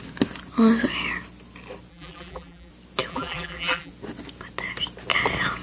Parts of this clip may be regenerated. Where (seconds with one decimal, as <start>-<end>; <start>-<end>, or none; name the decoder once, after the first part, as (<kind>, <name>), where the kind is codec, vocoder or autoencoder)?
1.9-2.7 (vocoder, BigVGAN v2); 3.1-3.9